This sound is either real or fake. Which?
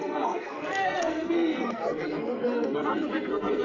fake